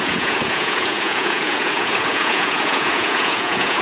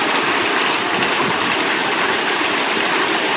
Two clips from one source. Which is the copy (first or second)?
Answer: first